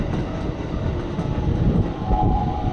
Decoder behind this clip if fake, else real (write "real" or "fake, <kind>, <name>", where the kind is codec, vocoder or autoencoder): real